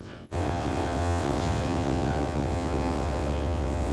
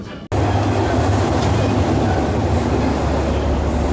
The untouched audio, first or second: second